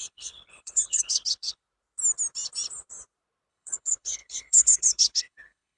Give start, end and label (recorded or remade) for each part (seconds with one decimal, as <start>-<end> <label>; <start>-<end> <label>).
0.0-1.6 remade; 1.6-3.5 recorded; 3.5-5.8 remade